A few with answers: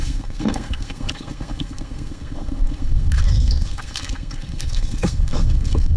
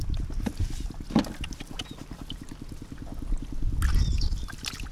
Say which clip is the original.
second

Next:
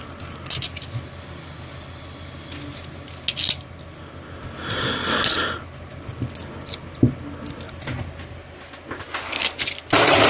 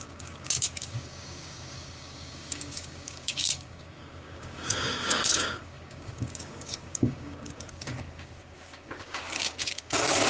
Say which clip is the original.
first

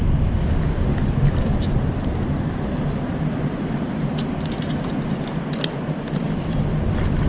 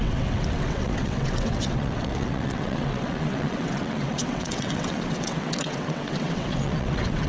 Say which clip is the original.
first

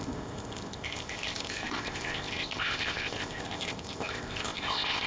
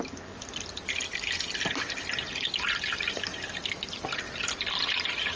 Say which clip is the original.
second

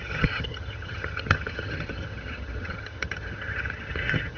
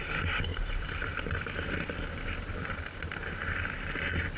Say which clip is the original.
second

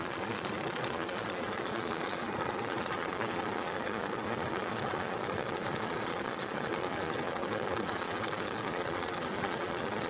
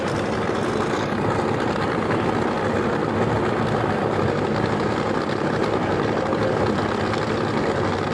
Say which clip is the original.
second